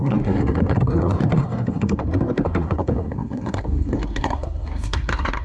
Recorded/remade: remade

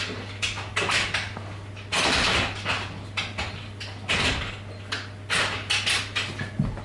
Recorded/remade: recorded